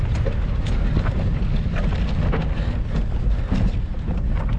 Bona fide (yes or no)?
yes